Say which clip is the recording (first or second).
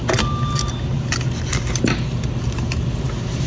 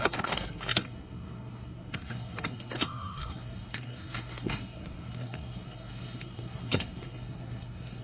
first